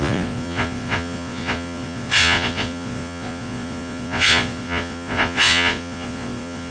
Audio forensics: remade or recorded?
remade